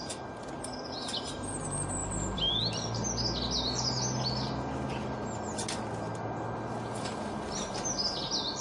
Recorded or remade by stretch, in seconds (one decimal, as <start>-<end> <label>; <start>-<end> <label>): 0.0-2.0 recorded; 2.0-2.5 remade; 2.5-8.6 recorded